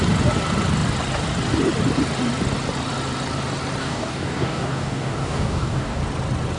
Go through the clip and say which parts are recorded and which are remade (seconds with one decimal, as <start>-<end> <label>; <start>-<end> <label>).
0.0-3.8 recorded; 3.8-6.0 remade; 6.0-6.6 recorded